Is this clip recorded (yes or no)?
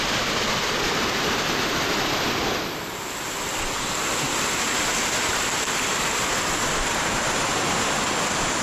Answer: yes